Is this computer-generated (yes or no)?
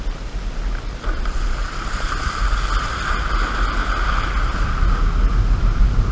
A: no